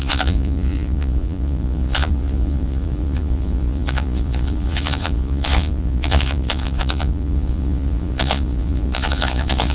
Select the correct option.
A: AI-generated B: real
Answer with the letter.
A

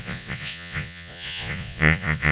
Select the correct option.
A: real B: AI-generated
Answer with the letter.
B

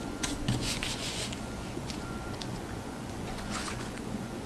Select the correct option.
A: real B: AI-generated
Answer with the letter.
B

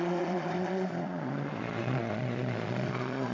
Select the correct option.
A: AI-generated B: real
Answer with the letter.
A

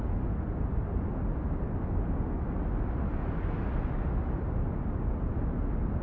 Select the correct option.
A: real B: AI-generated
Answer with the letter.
A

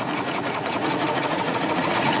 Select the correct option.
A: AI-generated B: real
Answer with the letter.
A